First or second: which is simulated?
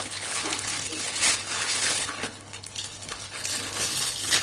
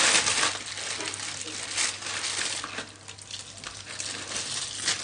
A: first